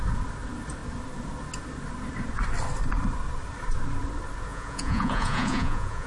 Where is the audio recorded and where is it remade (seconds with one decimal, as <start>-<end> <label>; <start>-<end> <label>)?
0.0-4.5 recorded; 4.5-6.1 remade